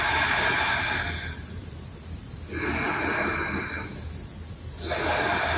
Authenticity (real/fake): real